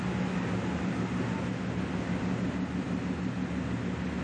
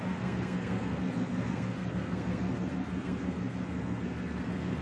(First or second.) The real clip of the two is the first